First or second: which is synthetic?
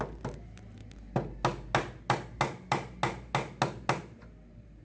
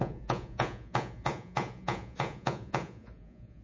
second